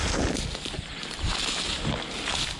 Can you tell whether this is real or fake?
real